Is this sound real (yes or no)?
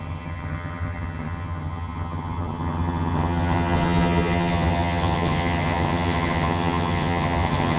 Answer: no